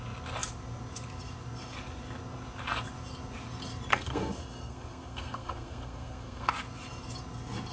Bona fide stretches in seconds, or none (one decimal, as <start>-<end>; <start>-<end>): 0.0-3.9; 6.5-7.7